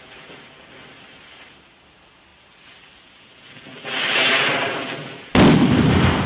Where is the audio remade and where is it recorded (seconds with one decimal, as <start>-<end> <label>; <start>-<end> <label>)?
0.0-6.3 recorded